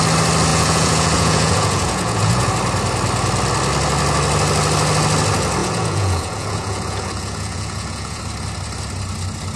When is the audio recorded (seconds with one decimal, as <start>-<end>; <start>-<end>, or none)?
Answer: 0.0-0.5; 2.5-5.6; 8.2-9.6

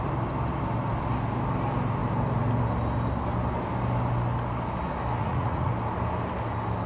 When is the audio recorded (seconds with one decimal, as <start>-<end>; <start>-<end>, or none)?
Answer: 0.0-5.2; 5.7-6.9

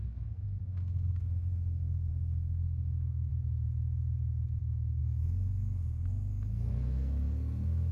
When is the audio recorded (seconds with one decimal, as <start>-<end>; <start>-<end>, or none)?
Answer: 3.3-4.6

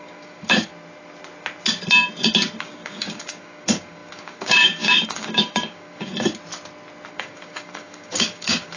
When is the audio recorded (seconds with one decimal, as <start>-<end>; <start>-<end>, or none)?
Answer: 0.7-2.6; 6.1-7.1

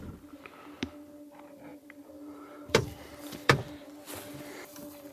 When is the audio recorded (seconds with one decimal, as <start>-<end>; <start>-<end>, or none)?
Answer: 0.0-1.7; 3.8-5.1

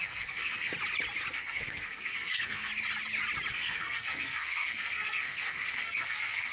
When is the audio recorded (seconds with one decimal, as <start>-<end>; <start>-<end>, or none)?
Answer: 0.7-1.3; 2.7-3.5